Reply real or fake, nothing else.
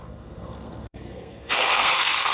fake